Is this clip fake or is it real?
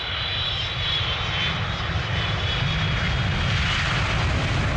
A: real